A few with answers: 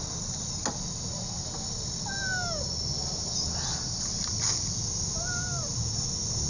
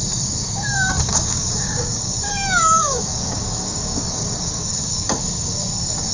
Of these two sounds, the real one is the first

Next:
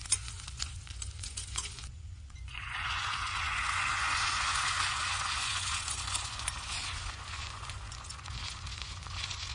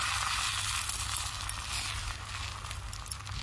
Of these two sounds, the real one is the second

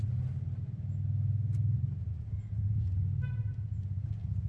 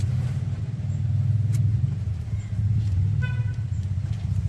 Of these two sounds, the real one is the first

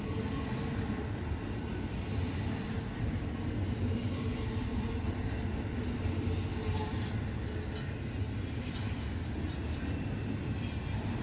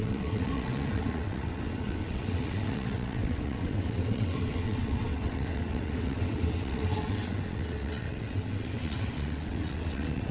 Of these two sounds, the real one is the first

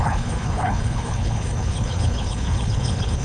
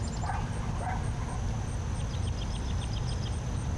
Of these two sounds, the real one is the second